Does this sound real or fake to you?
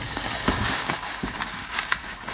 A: fake